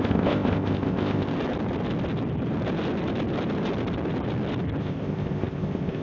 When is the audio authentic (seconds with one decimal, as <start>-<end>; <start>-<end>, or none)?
1.3-4.8

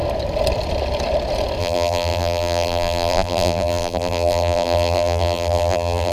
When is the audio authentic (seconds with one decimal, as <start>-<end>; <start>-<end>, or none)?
0.0-1.6